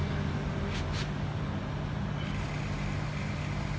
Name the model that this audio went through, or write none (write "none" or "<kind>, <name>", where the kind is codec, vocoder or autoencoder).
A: none